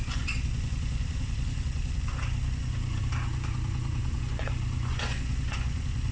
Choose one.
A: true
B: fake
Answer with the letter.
B